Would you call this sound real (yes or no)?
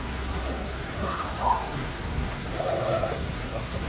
no